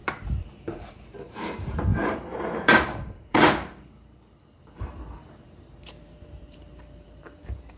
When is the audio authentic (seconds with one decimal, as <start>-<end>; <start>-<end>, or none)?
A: none